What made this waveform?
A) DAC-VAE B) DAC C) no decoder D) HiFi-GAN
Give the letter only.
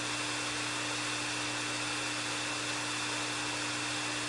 C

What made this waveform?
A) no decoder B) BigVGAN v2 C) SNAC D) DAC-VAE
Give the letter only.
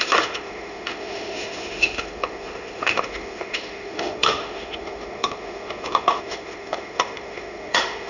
D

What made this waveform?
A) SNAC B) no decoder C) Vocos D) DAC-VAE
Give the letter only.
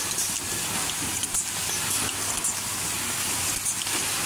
B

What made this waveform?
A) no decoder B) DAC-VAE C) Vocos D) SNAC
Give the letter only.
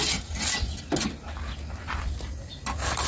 A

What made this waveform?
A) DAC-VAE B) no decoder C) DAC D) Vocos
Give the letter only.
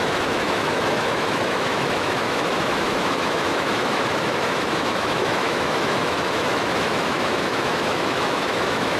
A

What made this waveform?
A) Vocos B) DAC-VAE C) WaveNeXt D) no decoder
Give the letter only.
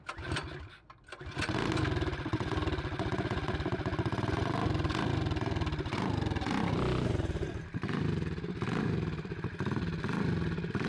D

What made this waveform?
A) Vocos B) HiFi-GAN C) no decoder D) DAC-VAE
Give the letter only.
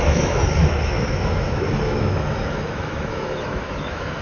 D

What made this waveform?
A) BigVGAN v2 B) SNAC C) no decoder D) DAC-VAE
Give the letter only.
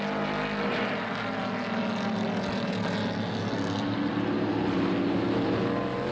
C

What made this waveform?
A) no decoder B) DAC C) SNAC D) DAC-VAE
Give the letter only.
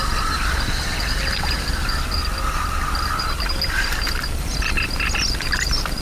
A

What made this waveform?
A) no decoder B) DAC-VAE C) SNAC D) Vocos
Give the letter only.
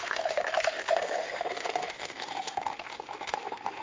B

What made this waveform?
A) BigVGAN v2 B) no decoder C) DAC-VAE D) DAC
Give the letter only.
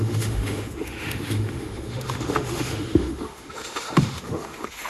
C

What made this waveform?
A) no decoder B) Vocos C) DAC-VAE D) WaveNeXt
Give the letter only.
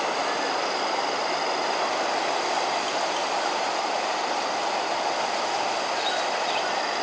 A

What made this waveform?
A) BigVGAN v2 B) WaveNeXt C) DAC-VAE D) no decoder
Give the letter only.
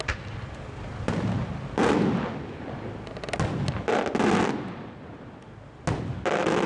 D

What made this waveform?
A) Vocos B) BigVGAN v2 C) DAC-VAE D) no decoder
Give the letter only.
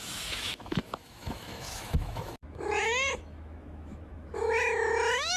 C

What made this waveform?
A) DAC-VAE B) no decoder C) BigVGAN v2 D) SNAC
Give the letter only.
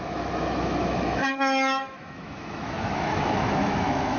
A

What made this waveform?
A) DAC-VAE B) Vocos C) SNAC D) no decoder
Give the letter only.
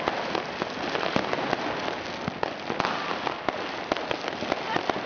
D